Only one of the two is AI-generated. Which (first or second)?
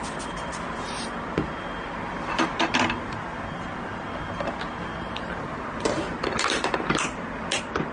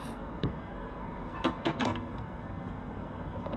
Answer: second